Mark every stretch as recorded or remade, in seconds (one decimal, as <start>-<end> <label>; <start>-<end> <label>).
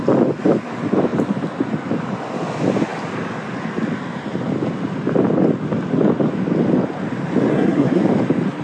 0.0-7.5 recorded; 7.5-8.0 remade; 8.0-8.6 recorded